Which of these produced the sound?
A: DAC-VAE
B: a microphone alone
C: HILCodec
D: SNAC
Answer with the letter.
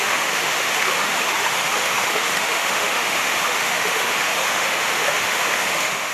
A